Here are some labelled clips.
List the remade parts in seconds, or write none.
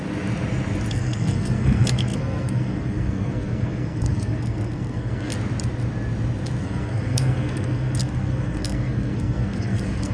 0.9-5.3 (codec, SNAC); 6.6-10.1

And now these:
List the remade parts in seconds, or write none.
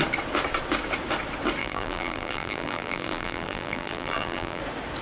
1.6-4.6 (vocoder, BigVGAN v2)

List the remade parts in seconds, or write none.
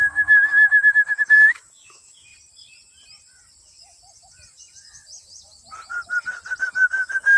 0.0-2.3 (autoencoder, DAC-VAE); 6.6-7.4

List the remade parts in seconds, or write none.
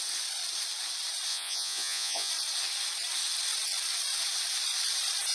1.3-2.3 (vocoder, Vocos)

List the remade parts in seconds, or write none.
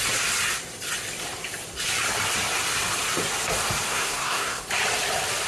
3.9-4.6 (codec, SNAC)